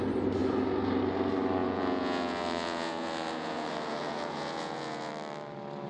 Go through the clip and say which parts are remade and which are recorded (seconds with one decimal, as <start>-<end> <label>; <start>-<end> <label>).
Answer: 0.0-1.6 recorded; 1.6-5.1 remade; 5.1-5.9 recorded